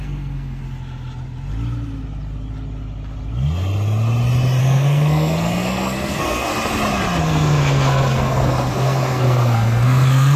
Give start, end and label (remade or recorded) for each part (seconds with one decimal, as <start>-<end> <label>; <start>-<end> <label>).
0.0-0.6 remade; 0.6-4.6 recorded; 4.6-6.5 remade; 6.5-7.2 recorded; 7.2-10.4 remade